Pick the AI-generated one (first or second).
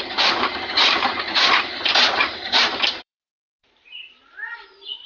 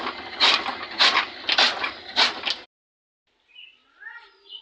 first